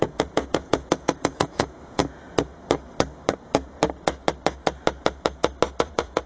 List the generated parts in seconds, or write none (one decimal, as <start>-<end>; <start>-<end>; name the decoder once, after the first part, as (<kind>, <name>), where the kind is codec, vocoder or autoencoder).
0.0-2.0 (vocoder, Vocos); 5.8-6.3